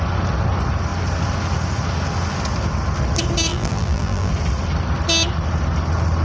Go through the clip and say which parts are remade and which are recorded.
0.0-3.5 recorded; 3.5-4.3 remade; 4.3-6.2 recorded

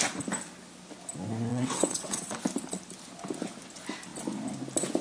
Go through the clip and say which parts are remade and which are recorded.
0.0-1.5 recorded; 1.5-2.4 remade; 2.4-5.0 recorded

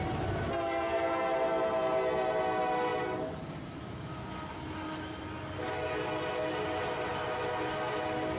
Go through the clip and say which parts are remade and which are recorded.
0.0-8.4 recorded

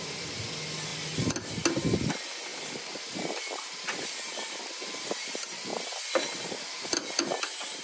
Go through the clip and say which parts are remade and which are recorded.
0.0-7.8 recorded